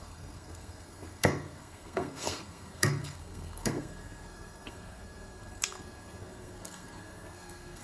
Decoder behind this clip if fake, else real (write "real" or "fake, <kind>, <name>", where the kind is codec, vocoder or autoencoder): fake, codec, SNAC